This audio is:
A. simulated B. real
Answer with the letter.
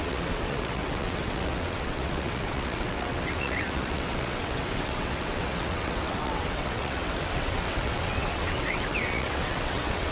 A